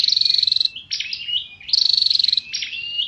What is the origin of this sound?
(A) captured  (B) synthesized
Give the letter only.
A